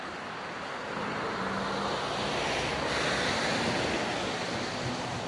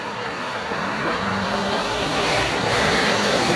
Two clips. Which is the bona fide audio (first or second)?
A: first